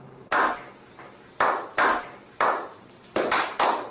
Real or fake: real